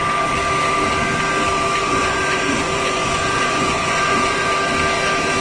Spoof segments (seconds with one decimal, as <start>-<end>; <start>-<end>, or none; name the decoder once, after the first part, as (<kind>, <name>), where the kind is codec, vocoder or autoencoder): 1.8-4.5 (vocoder, Vocos)